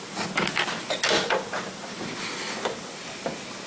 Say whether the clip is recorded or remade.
recorded